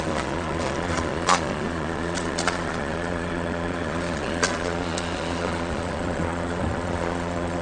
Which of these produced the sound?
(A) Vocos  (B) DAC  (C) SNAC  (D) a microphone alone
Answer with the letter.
A